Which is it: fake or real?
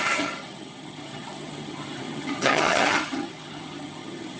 fake